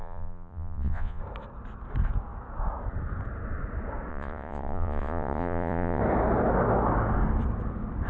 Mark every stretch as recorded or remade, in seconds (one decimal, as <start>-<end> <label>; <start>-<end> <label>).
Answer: 0.0-1.2 remade; 1.2-4.1 recorded; 4.1-6.0 remade; 6.0-8.1 recorded